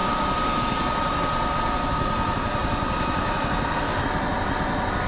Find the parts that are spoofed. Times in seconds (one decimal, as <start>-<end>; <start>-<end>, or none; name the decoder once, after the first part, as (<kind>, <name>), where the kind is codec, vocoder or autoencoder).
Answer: 0.0-0.6 (vocoder, BigVGAN v2); 2.6-4.2